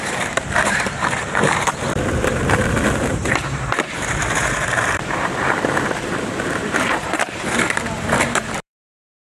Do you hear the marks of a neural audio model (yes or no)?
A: yes